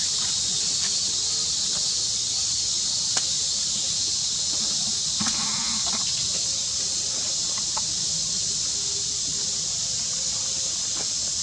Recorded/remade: recorded